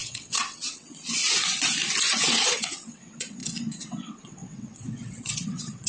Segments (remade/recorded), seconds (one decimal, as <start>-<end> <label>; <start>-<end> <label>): 0.0-1.2 remade; 1.2-2.2 recorded; 2.2-5.9 remade